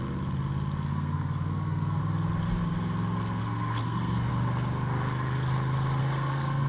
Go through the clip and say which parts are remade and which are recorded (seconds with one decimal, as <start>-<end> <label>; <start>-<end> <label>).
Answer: 0.0-0.9 recorded; 0.9-2.0 remade; 2.0-3.4 recorded; 3.4-4.3 remade; 4.3-6.0 recorded; 6.0-6.7 remade